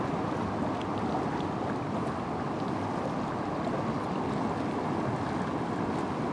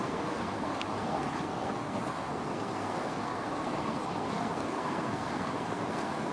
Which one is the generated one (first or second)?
second